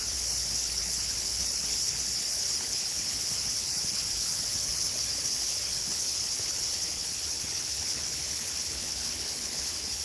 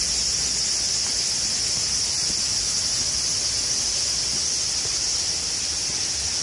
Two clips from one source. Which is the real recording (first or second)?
second